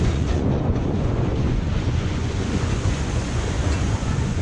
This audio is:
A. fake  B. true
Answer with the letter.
A